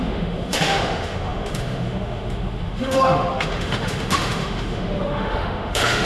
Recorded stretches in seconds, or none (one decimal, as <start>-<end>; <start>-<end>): none